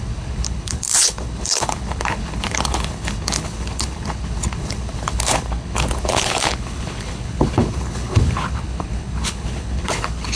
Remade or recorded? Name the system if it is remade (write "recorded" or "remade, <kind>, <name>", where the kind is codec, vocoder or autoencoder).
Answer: remade, codec, HILCodec